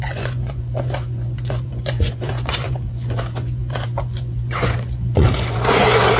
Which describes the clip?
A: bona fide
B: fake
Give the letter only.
B